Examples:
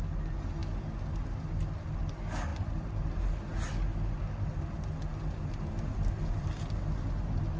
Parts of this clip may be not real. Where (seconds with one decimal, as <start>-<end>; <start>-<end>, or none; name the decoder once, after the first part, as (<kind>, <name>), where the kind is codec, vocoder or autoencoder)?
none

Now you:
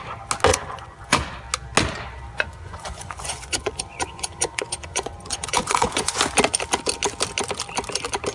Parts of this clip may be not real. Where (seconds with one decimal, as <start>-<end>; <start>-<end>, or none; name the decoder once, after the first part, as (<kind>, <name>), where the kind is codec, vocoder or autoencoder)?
0.5-1.3 (vocoder, Vocos); 2.3-6.2

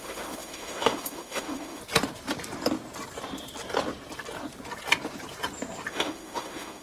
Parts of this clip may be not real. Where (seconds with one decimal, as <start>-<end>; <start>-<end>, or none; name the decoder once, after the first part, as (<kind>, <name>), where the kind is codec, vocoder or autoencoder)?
0.0-1.8 (autoencoder, DAC-VAE); 5.9-6.8

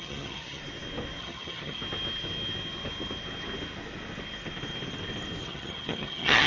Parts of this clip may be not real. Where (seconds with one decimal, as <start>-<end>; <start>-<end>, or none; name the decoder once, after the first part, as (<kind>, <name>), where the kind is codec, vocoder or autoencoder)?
0.0-0.6 (vocoder, HiFi-GAN); 1.2-1.8; 5.4-6.5